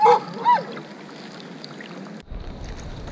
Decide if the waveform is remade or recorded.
recorded